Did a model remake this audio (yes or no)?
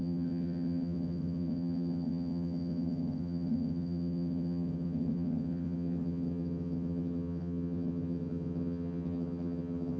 yes